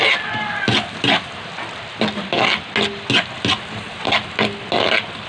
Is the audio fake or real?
real